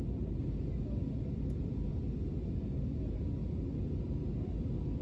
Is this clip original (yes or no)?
yes